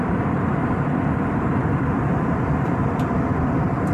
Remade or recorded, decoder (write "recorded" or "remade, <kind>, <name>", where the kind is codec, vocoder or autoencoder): remade, vocoder, BigVGAN v2